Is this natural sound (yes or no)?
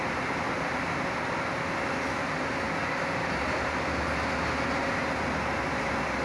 yes